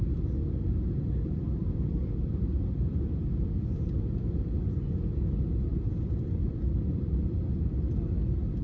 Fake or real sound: fake